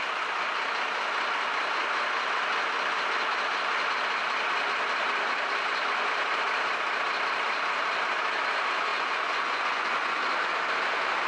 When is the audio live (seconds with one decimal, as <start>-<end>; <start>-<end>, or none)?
0.0-8.9; 10.2-11.3